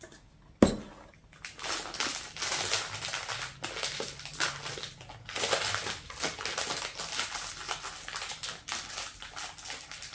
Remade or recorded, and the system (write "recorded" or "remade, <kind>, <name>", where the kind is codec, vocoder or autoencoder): recorded